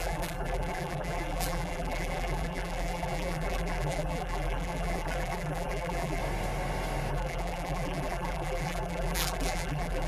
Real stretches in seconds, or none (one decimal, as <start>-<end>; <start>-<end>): 6.2-7.1